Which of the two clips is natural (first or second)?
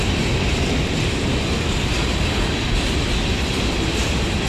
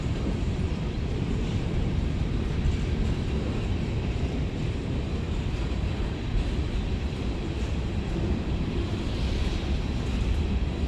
first